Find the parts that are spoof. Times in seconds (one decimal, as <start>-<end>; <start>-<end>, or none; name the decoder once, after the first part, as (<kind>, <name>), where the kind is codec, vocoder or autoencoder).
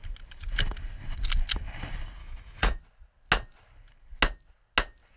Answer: 2.2-2.8 (autoencoder, DAC-VAE)